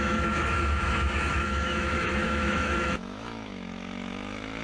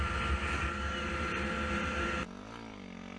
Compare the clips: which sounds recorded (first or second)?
second